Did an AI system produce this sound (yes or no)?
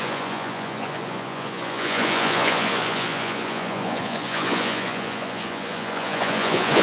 yes